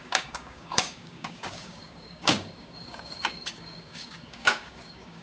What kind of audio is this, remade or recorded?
remade